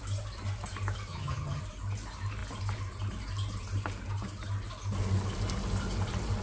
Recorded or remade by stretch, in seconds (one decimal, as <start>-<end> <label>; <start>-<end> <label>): 0.0-1.1 recorded; 1.1-1.6 remade; 1.6-6.4 recorded

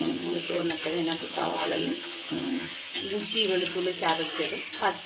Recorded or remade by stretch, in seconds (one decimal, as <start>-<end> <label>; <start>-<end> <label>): 0.0-0.6 remade; 0.6-1.2 recorded; 1.2-3.0 remade; 3.0-5.1 recorded